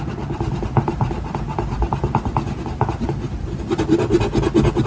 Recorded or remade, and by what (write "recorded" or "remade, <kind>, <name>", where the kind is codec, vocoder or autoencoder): recorded